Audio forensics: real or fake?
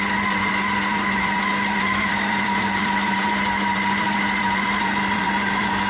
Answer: fake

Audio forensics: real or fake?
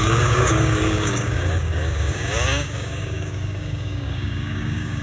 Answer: fake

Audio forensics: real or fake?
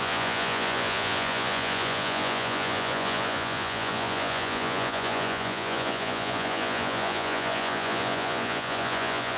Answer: fake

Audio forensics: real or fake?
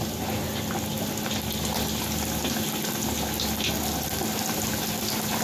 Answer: real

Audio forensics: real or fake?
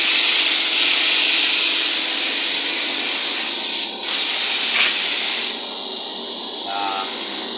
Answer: real